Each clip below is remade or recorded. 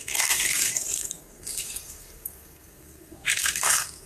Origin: remade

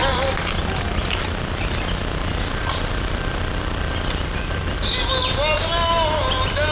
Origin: recorded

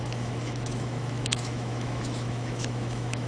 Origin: remade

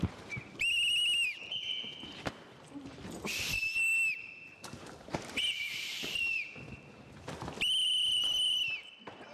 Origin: remade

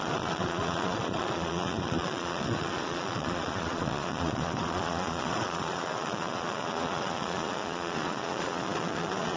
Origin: remade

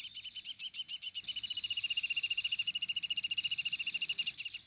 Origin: remade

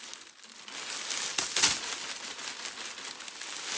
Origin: recorded